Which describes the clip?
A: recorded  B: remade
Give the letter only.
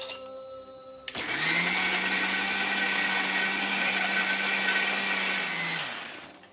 A